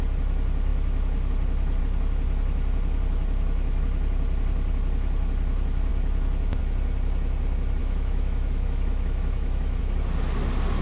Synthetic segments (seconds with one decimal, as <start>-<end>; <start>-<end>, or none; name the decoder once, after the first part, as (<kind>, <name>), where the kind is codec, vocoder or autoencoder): 7.8-9.8 (autoencoder, DAC-VAE)